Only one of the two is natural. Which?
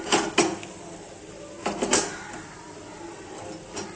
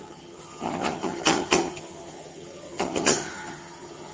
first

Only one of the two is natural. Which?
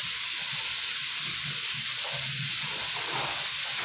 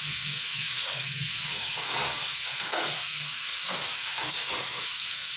first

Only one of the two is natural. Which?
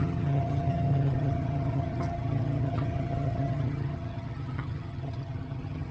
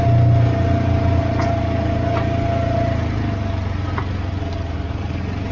second